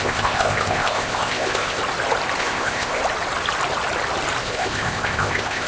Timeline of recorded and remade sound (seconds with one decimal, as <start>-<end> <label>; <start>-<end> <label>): 0.0-1.8 remade; 1.8-2.4 recorded; 2.4-3.0 remade; 3.0-4.4 recorded; 4.4-5.7 remade